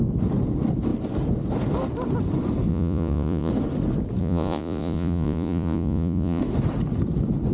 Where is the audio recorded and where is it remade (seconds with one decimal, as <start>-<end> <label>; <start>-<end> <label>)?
0.0-2.7 recorded; 2.7-3.5 remade; 3.5-4.2 recorded; 4.2-6.4 remade; 6.4-7.5 recorded